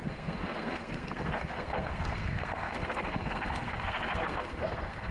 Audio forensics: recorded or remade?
remade